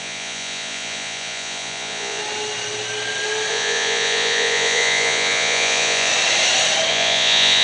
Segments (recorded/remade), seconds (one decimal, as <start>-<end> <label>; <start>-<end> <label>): 0.0-2.2 remade; 2.2-3.5 recorded; 3.5-6.1 remade; 6.1-6.9 recorded; 6.9-7.6 remade